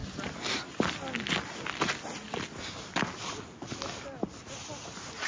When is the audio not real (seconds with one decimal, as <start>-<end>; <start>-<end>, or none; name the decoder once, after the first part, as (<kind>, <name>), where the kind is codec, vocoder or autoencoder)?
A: none